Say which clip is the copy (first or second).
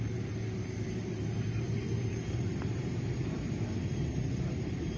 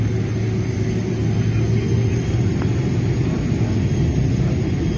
first